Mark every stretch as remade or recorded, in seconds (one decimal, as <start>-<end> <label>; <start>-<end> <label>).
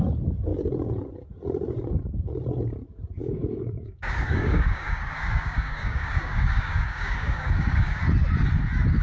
0.0-3.2 recorded; 3.2-8.0 remade; 8.0-9.0 recorded